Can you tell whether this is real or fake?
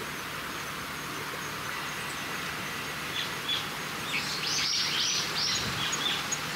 real